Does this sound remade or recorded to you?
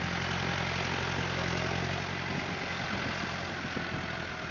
recorded